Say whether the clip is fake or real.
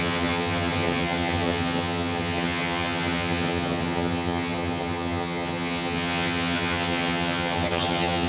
fake